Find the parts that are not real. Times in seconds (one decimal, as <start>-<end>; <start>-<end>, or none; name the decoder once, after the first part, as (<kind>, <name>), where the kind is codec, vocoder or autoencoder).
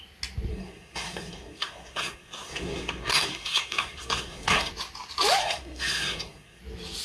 0.5-4.7 (codec, SNAC); 5.4-6.6